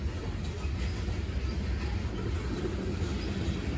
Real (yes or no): yes